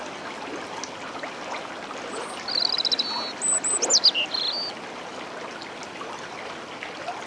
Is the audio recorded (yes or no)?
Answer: yes